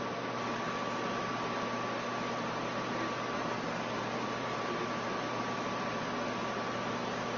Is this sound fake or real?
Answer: real